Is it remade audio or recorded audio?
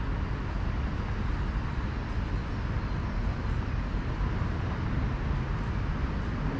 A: recorded